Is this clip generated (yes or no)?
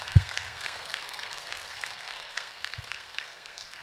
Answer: yes